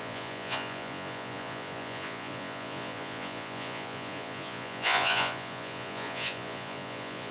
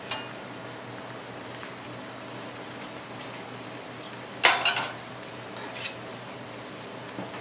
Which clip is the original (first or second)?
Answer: second